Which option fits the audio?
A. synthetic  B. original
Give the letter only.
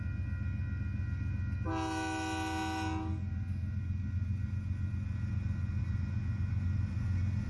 B